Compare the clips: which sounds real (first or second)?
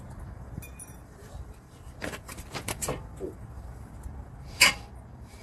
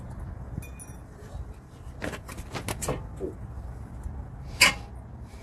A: second